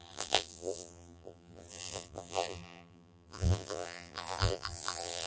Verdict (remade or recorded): remade